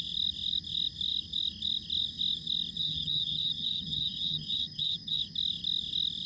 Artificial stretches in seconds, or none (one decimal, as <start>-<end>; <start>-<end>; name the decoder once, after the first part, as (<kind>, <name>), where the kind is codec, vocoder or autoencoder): 2.8-5.2 (vocoder, HiFi-GAN)